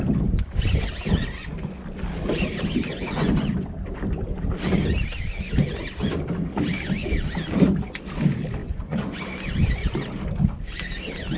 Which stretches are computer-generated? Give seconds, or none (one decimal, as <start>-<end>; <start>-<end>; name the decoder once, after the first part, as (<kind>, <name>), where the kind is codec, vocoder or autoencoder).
2.9-3.5 (vocoder, Vocos); 8.6-9.2